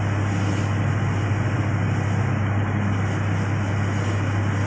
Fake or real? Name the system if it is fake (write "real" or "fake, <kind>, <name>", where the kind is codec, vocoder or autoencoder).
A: real